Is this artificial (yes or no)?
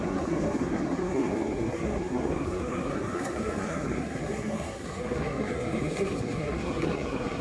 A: yes